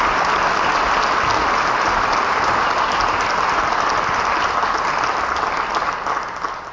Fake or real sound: real